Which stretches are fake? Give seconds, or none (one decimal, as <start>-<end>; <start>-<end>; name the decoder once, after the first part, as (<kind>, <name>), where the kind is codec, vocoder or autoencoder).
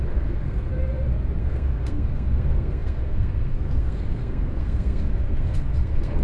0.0-0.7 (codec, SNAC); 1.4-6.2